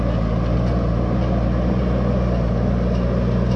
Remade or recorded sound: recorded